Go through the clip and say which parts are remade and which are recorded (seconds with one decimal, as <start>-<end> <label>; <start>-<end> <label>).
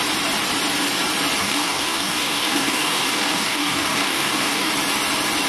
0.0-1.4 recorded; 1.4-4.7 remade; 4.7-5.5 recorded